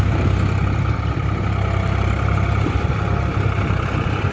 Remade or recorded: recorded